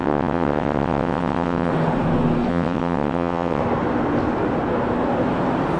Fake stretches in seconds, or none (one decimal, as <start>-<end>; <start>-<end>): 0.0-1.7; 2.5-3.6